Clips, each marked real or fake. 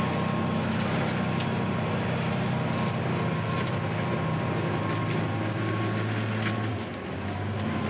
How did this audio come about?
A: real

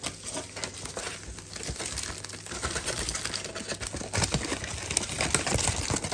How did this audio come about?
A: real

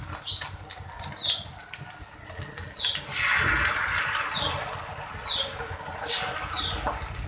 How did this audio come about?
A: real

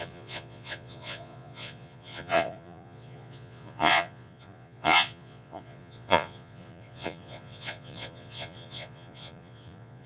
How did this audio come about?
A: fake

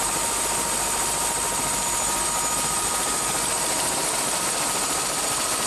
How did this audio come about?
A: real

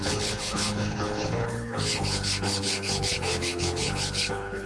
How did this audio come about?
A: fake